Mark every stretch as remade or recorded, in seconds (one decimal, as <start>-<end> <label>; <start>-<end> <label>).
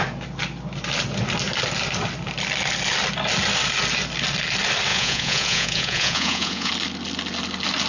0.0-4.9 recorded; 4.9-6.7 remade; 6.7-7.9 recorded